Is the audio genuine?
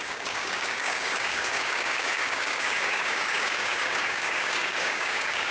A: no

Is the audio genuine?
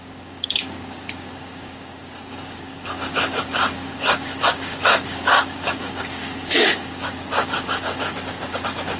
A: no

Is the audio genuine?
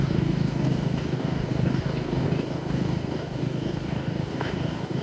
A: no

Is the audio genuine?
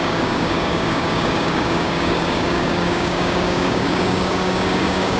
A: no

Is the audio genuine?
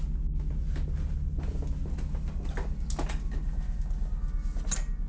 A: yes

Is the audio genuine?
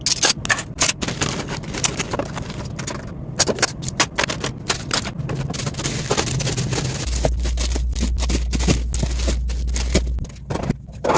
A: yes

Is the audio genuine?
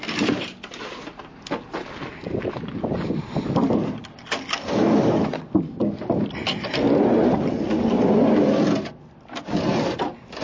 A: yes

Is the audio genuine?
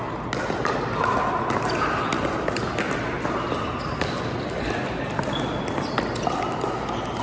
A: yes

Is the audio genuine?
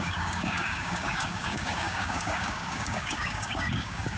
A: no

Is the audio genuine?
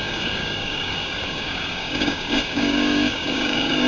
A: no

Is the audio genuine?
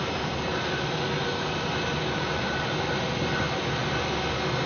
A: yes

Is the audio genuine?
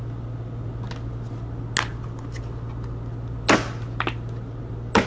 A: yes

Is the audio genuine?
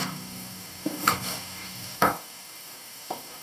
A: no